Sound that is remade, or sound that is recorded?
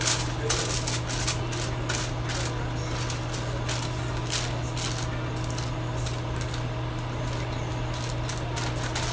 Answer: recorded